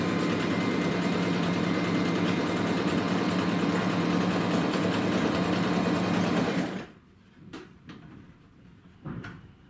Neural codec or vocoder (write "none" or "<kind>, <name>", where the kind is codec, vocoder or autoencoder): vocoder, BigVGAN v2